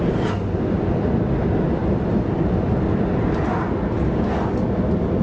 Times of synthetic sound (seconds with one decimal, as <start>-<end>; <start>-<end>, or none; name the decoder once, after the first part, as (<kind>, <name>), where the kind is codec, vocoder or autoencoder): none